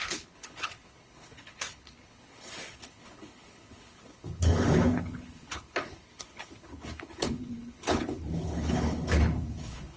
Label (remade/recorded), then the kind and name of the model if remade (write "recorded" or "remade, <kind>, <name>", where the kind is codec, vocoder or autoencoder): remade, codec, HILCodec